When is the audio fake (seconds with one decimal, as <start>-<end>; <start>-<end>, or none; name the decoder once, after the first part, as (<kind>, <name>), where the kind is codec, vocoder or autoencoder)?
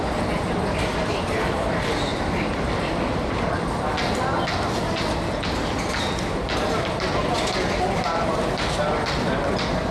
2.1-3.3 (vocoder, BigVGAN v2)